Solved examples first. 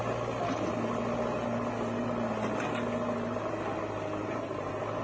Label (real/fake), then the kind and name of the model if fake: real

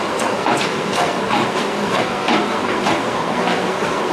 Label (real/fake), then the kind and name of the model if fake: fake, codec, SNAC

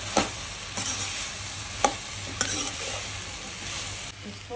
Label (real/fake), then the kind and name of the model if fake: real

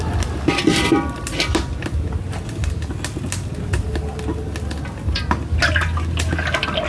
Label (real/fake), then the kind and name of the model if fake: real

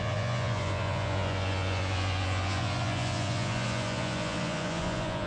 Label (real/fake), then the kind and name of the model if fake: fake, vocoder, Vocos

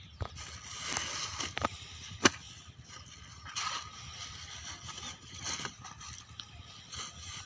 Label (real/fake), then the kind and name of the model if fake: real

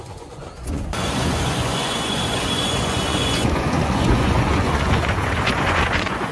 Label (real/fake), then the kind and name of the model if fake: fake, vocoder, Vocos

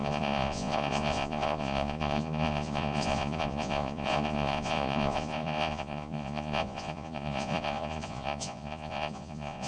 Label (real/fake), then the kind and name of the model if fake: fake, vocoder, Vocos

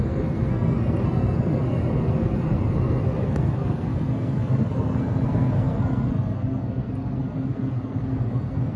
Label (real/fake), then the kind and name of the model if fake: fake, codec, SNAC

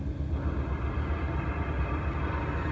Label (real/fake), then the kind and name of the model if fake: real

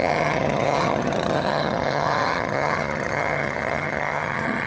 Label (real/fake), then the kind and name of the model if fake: fake, vocoder, HiFi-GAN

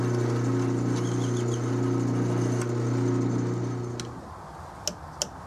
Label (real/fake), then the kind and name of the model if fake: real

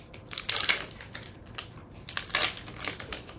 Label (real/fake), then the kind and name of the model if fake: real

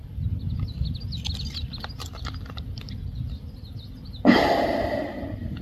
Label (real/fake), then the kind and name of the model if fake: real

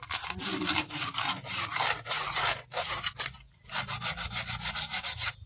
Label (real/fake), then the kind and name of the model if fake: fake, vocoder, BigVGAN v2